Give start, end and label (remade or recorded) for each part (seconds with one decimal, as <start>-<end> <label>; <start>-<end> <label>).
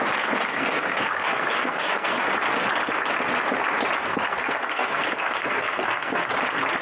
0.0-0.5 recorded; 0.5-2.3 remade; 2.3-4.1 recorded; 4.1-6.3 remade; 6.3-6.8 recorded